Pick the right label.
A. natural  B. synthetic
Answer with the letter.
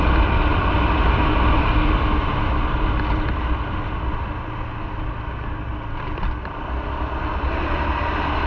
A